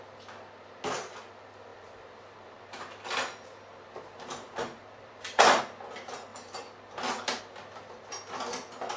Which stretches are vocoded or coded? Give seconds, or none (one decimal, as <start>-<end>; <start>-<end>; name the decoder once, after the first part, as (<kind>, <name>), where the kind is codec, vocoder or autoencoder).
1.7-5.6 (vocoder, BigVGAN v2); 6.3-7.4